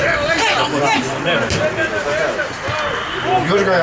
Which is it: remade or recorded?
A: recorded